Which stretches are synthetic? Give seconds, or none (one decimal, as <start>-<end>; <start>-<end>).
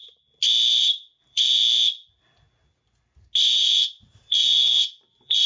0.8-1.6; 3.5-5.5